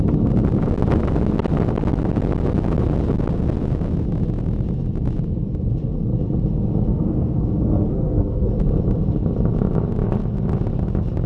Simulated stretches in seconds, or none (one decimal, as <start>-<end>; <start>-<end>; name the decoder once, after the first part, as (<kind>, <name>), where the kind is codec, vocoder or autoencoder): 6.9-8.5 (codec, SNAC)